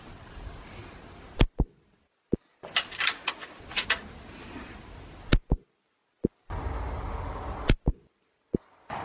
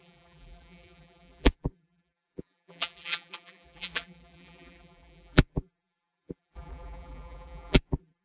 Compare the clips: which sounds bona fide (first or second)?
first